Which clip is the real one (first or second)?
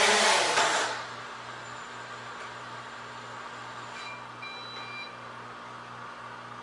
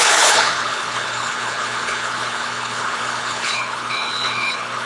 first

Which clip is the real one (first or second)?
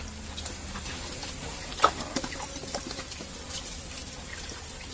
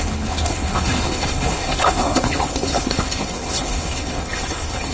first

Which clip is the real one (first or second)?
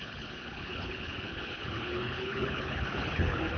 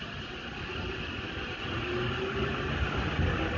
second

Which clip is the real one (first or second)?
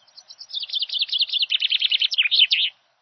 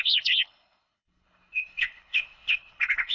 first